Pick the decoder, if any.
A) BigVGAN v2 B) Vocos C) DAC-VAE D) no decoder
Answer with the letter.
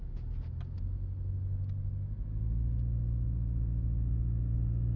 D